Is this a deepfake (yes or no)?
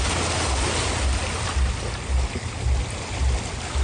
no